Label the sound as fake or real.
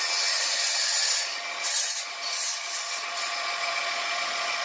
fake